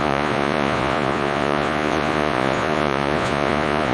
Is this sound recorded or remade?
remade